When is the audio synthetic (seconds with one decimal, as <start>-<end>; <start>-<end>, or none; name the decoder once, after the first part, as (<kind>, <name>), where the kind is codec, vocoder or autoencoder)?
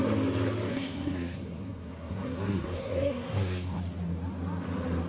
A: 0.7-3.8 (codec, SNAC)